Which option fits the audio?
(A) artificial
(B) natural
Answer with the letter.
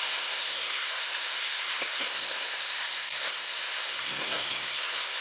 A